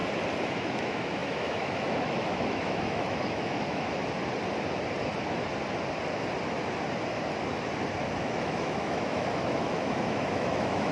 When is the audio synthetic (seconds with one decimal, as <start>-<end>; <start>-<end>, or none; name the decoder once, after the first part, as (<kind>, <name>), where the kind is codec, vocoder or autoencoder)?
0.5-4.0 (autoencoder, DAC-VAE); 8.2-10.9